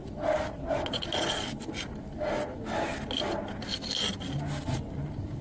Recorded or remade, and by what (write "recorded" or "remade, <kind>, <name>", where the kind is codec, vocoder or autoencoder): recorded